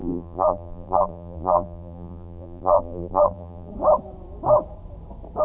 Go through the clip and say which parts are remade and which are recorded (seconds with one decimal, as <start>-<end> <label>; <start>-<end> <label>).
0.0-3.7 remade; 3.7-5.4 recorded